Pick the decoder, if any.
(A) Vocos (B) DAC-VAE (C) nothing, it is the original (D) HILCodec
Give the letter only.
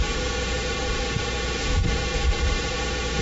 B